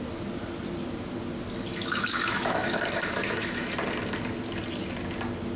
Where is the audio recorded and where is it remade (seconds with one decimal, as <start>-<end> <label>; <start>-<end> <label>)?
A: 0.0-1.7 recorded; 1.7-3.7 remade; 3.7-5.6 recorded